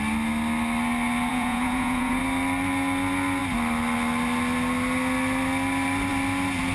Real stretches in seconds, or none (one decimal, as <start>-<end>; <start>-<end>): 0.0-1.3; 2.2-6.7